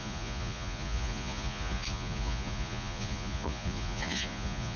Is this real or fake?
fake